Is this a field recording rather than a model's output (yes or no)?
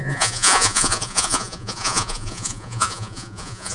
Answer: no